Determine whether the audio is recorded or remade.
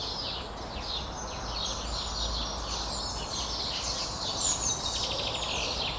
recorded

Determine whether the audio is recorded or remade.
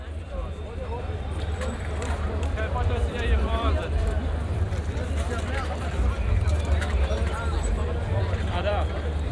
remade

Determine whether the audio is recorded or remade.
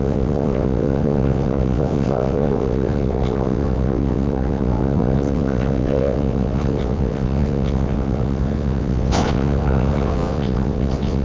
remade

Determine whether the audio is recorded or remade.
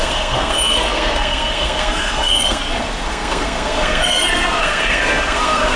remade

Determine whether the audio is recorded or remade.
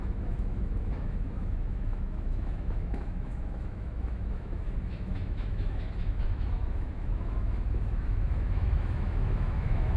remade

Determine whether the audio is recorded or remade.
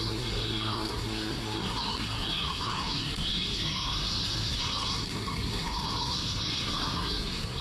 remade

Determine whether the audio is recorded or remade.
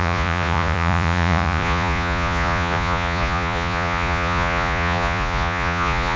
remade